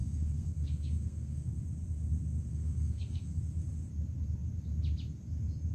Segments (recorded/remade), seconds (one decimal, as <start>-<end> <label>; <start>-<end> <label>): 0.0-1.6 remade; 1.6-2.5 recorded; 2.5-3.4 remade; 3.4-5.7 recorded